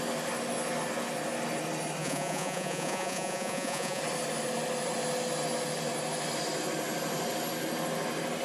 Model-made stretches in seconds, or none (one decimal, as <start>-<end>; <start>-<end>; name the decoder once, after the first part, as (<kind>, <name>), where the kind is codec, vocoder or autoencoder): 2.0-4.0 (vocoder, Vocos)